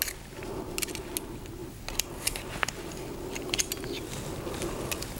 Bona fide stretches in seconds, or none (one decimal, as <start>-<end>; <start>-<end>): 0.0-5.2